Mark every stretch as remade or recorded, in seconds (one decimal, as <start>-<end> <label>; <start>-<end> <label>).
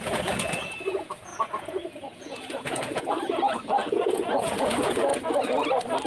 0.0-5.1 remade; 5.1-6.1 recorded